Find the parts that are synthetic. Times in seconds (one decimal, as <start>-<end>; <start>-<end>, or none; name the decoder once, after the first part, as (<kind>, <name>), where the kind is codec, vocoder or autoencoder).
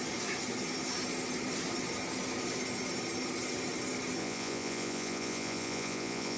4.2-6.4 (vocoder, Vocos)